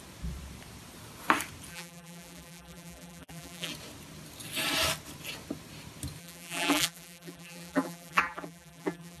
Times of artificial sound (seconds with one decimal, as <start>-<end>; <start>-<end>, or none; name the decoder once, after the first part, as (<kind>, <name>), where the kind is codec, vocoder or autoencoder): 1.7-3.7 (vocoder, BigVGAN v2); 6.2-9.2